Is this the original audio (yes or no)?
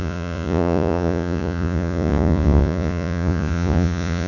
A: no